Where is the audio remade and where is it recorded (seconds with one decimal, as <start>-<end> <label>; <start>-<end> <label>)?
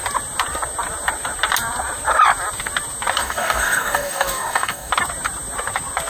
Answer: 0.0-3.2 recorded; 3.2-4.9 remade; 4.9-6.1 recorded